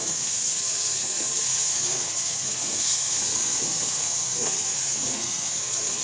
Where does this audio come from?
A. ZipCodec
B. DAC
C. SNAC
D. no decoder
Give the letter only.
C